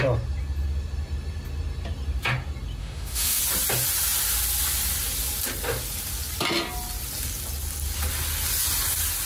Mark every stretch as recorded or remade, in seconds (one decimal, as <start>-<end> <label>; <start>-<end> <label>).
0.0-2.8 recorded; 2.8-3.4 remade; 3.4-9.3 recorded